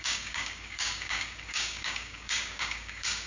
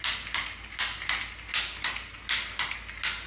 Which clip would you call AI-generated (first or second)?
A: first